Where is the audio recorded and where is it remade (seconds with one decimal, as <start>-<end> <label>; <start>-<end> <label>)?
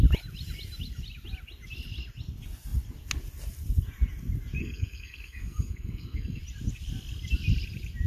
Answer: 0.0-4.6 recorded; 4.6-6.4 remade; 6.4-8.1 recorded